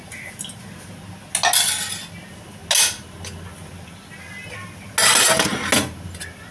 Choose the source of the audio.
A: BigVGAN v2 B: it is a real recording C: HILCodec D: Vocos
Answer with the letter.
B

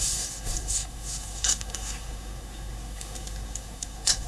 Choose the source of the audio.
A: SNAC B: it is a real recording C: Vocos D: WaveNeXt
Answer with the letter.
A